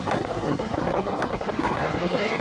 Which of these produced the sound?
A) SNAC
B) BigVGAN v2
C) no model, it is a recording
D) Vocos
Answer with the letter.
A